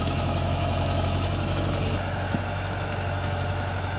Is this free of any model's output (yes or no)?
no